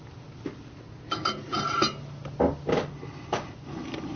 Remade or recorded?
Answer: recorded